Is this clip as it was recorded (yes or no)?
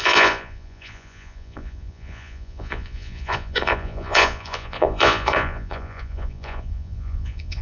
no